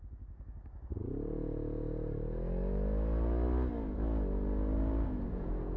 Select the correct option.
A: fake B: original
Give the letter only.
B